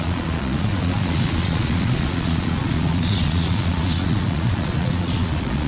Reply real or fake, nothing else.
fake